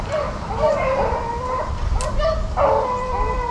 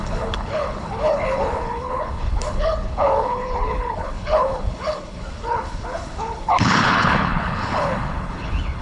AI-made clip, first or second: second